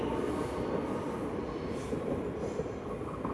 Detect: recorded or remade recorded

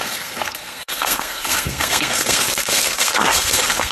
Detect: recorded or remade remade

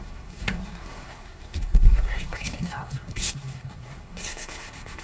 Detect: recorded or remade remade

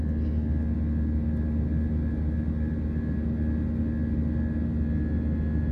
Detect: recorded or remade recorded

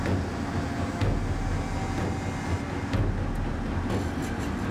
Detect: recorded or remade recorded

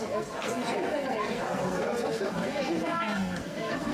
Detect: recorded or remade remade